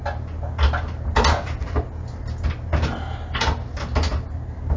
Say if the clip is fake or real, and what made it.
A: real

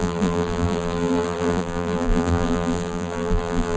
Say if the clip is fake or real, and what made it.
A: fake, vocoder, BigVGAN v2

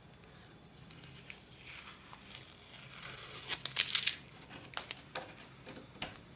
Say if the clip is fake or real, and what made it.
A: real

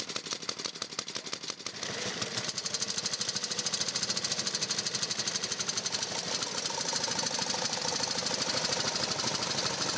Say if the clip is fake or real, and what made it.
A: real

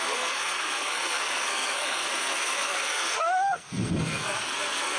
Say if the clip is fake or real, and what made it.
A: fake, codec, SNAC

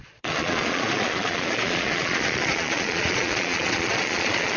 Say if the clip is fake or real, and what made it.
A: fake, vocoder, Vocos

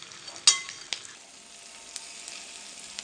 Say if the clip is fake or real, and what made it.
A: real